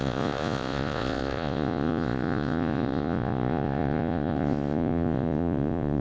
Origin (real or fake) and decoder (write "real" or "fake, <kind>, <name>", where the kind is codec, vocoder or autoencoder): fake, vocoder, Vocos